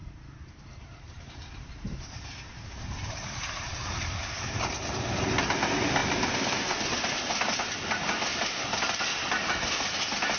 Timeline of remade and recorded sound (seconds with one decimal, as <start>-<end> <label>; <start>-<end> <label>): 0.0-4.6 remade; 4.6-8.3 recorded; 8.3-8.8 remade; 8.8-10.4 recorded